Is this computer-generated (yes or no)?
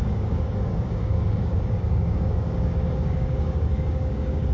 yes